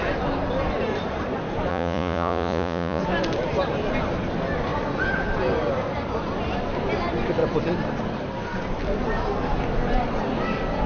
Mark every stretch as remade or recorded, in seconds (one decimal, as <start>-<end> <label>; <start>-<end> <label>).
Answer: 0.0-1.7 recorded; 1.7-3.0 remade; 3.0-10.9 recorded